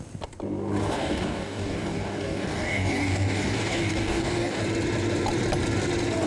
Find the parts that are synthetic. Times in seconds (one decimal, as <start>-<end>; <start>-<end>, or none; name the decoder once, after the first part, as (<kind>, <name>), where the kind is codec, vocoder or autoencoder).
0.8-4.6 (codec, DAC)